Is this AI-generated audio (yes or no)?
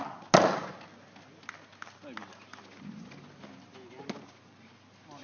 no